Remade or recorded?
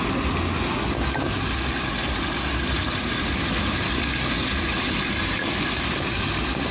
recorded